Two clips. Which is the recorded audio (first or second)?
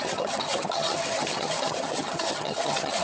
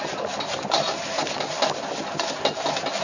second